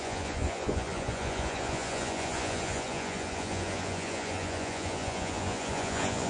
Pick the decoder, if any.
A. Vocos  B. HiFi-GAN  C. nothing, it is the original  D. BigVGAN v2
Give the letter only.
A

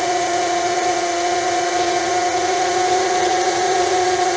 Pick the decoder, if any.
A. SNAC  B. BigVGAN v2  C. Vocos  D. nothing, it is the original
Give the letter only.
C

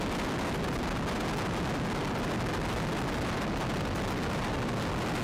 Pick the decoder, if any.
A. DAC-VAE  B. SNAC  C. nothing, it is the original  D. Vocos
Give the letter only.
C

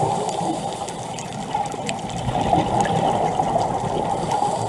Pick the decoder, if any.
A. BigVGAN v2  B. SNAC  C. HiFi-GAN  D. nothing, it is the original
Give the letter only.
D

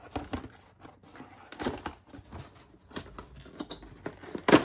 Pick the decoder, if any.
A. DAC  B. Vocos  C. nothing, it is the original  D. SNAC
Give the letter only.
C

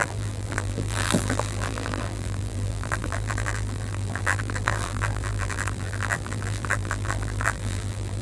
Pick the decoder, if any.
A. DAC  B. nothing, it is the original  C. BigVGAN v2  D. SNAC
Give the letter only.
C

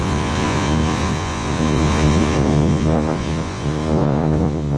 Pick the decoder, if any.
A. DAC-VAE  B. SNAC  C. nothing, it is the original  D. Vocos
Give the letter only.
D